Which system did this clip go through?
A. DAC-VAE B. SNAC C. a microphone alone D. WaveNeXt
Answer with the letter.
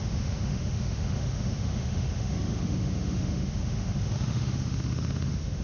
A